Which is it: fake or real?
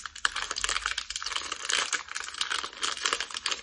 real